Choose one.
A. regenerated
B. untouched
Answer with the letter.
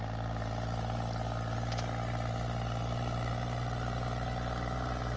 B